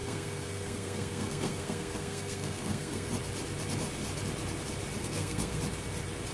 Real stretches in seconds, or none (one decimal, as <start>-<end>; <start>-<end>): 3.1-5.0; 5.6-6.3

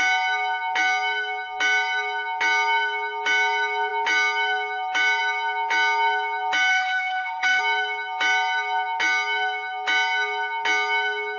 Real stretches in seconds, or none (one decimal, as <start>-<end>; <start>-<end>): 0.0-6.7; 7.6-11.4

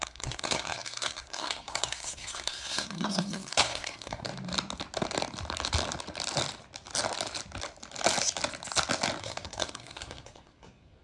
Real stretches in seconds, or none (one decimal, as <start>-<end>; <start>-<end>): 4.3-9.2

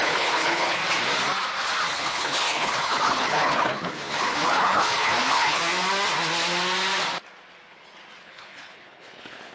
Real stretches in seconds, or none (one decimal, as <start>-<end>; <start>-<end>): 0.8-1.9; 5.6-8.2